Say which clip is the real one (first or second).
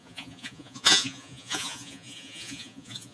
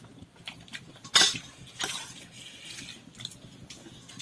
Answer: second